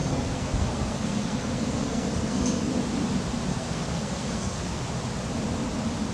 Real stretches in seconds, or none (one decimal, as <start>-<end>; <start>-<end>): 2.7-3.5; 4.8-6.1